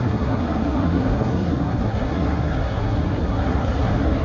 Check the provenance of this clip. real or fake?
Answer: fake